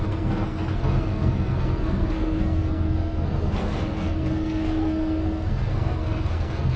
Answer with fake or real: fake